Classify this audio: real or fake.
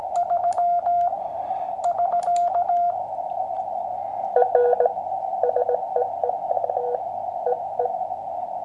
fake